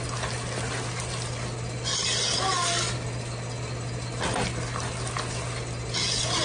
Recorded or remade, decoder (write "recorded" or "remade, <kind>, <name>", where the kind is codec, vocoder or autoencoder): recorded